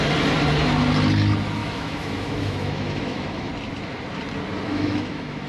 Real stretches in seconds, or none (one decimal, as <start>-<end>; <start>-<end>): 0.0-1.6; 3.5-4.7